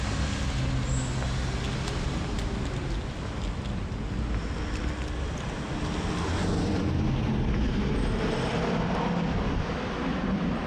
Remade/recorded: recorded